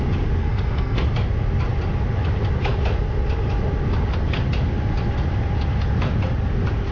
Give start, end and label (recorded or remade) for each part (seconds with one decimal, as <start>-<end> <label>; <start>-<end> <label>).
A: 0.0-0.4 recorded; 0.4-1.0 remade; 1.0-6.9 recorded